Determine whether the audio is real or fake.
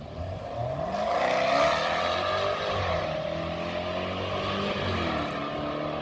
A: real